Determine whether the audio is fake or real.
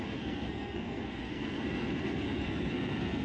fake